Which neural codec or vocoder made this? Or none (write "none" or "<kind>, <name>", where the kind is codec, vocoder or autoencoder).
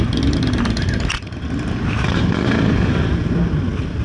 none